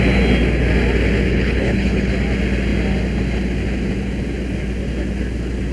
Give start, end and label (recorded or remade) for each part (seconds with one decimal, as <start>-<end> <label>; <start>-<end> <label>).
0.0-1.3 recorded; 1.3-2.1 remade; 2.1-5.7 recorded